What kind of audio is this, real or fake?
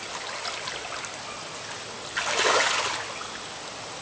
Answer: real